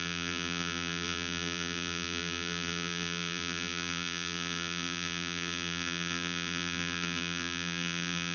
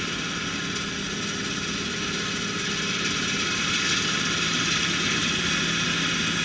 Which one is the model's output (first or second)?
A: first